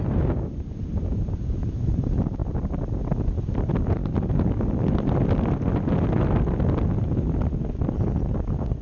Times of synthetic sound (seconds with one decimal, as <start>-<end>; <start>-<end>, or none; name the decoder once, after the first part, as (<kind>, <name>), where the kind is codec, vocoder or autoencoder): none